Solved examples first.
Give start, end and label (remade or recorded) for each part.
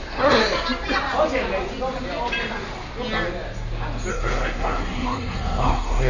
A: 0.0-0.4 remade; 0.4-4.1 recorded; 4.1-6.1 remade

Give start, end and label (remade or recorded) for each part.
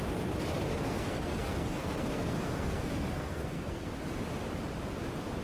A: 0.0-0.7 recorded; 0.7-3.9 remade; 3.9-5.4 recorded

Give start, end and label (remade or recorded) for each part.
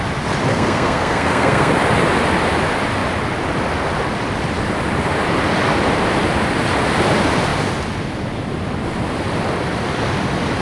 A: 0.0-0.5 recorded; 0.5-1.7 remade; 1.7-10.6 recorded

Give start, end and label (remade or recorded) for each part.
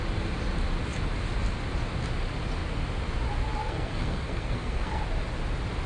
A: 0.0-3.6 recorded; 3.6-5.0 remade; 5.0-5.9 recorded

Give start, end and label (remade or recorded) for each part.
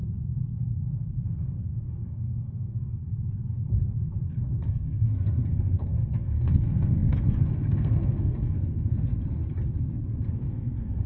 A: 0.0-0.6 recorded; 0.6-3.0 remade; 3.0-4.7 recorded; 4.7-9.1 remade; 9.1-10.3 recorded; 10.3-11.1 remade